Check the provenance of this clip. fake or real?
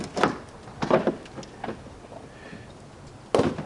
real